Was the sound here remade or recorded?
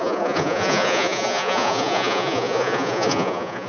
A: remade